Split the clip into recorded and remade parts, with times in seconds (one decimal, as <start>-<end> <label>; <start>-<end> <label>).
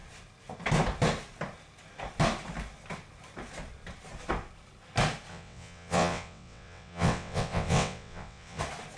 0.0-5.3 recorded; 5.3-8.6 remade; 8.6-9.0 recorded